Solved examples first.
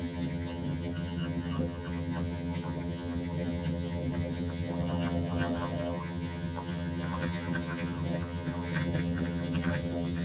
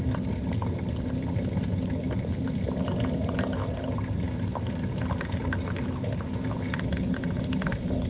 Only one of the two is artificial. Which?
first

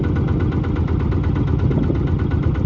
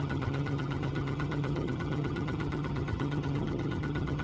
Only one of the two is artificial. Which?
second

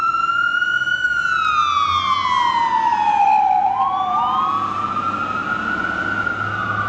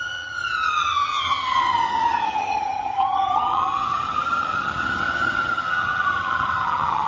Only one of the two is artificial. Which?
second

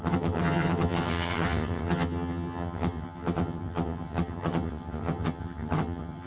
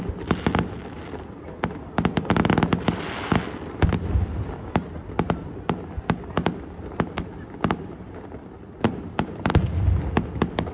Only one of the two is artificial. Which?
first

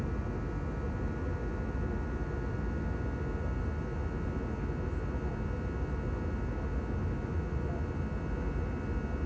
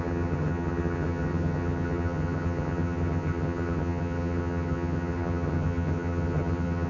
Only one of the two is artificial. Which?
second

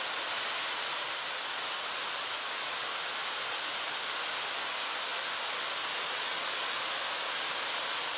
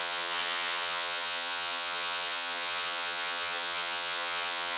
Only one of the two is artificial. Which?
second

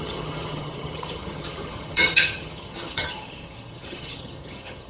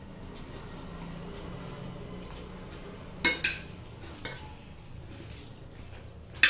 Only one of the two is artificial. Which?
first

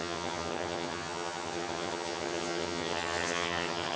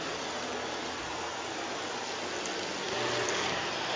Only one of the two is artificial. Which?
first